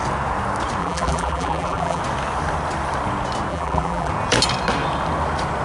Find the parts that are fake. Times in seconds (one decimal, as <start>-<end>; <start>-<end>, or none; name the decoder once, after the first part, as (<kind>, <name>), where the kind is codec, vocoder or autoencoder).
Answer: 0.8-2.0 (vocoder, BigVGAN v2); 3.5-4.1